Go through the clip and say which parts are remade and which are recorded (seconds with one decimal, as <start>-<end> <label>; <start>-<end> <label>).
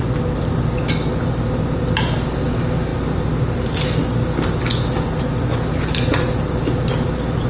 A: 0.0-7.5 recorded